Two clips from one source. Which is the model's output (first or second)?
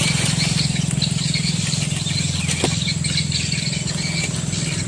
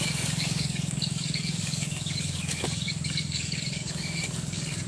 second